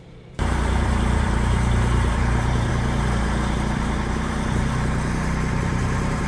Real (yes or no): no